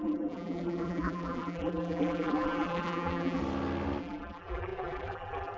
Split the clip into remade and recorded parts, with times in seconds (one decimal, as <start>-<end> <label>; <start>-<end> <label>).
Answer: 0.0-3.4 remade; 3.4-4.0 recorded; 4.0-5.6 remade